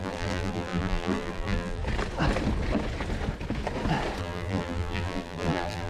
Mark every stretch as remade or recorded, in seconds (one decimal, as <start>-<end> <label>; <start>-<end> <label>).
0.0-1.8 remade; 1.8-4.2 recorded; 4.2-5.9 remade